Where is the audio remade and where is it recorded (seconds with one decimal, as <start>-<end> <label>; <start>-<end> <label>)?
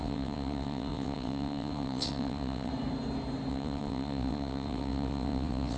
0.0-2.7 remade; 2.7-3.5 recorded; 3.5-5.8 remade